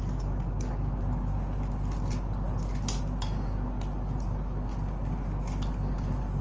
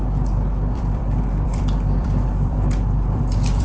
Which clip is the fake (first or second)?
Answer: second